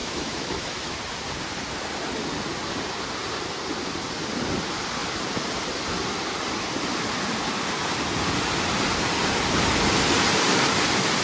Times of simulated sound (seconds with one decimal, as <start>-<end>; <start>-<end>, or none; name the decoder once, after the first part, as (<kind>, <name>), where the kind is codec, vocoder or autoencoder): 0.0-1.0 (autoencoder, DAC-VAE)